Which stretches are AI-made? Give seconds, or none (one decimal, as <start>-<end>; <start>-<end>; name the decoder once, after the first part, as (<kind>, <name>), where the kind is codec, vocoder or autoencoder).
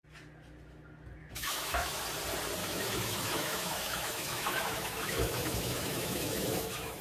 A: 1.2-2.0 (autoencoder, DAC-VAE); 2.6-7.0